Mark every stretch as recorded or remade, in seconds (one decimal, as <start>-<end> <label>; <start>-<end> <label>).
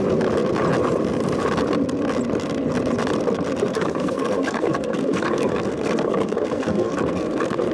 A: 0.0-3.7 recorded; 3.7-7.7 remade